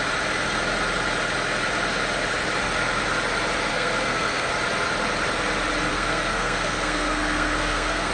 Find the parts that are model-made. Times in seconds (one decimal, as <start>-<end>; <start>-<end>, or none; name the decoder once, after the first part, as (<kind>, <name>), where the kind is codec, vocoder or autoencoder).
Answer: 3.7-4.5 (codec, SNAC); 5.9-8.1